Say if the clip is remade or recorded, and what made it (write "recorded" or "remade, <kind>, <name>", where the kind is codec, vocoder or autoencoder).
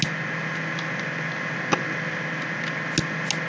recorded